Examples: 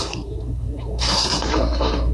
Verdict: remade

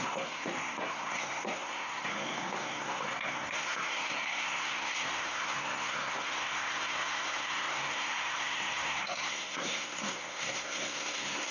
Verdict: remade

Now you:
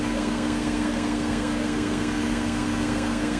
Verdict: remade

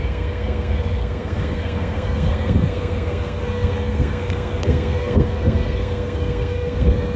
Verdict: remade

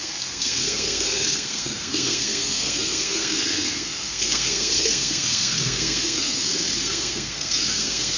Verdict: remade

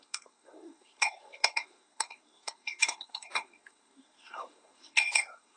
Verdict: remade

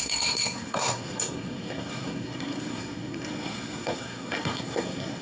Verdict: remade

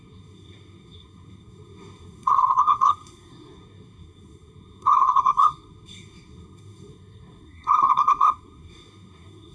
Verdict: remade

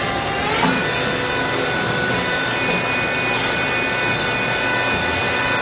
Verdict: recorded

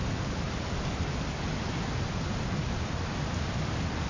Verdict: recorded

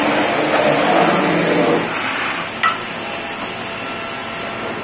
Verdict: recorded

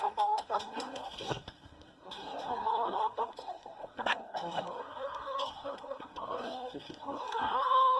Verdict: remade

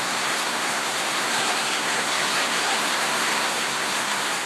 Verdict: remade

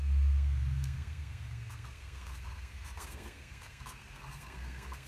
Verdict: remade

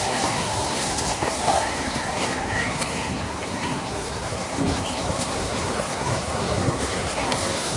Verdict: remade